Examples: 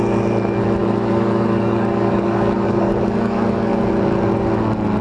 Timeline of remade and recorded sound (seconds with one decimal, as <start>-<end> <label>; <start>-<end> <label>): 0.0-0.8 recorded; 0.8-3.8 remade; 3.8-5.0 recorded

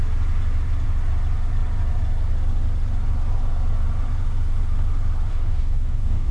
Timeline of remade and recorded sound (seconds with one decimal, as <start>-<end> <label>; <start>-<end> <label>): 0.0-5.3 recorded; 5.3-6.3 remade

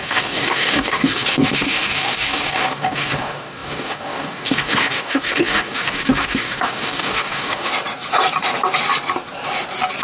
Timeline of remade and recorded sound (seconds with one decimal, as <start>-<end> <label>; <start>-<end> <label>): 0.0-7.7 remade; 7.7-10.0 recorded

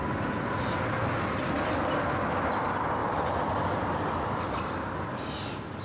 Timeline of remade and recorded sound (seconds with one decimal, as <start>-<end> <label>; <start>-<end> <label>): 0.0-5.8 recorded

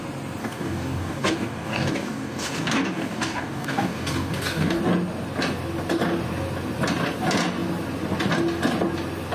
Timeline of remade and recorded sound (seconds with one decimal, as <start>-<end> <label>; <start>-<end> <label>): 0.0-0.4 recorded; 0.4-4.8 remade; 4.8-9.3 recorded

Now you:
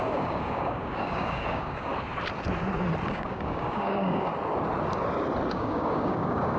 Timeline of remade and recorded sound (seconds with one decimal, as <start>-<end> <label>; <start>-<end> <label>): 0.0-1.9 remade; 1.9-3.1 recorded; 3.1-4.3 remade; 4.3-5.5 recorded; 5.5-6.6 remade

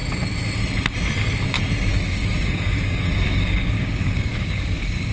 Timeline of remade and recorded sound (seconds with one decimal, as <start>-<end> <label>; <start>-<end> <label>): 0.0-1.9 recorded; 1.9-5.1 remade